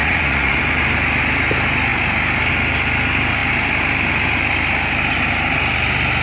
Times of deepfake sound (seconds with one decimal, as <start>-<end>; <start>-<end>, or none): 0.0-0.6

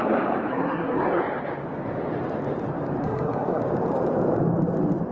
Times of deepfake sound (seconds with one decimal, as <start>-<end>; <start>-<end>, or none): 0.5-1.2; 3.0-3.6

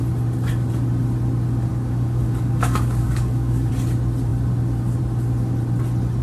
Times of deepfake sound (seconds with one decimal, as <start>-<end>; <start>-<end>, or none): 1.7-3.7

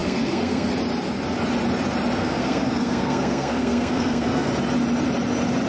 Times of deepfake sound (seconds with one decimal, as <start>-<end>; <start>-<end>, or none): 0.0-0.7; 2.2-4.5

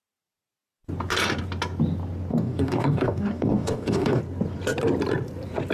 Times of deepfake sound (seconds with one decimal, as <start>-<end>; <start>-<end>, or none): 2.3-4.2

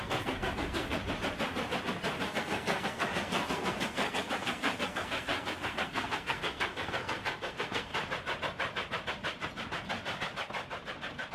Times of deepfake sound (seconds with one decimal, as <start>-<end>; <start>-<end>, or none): 0.0-1.0; 2.3-7.9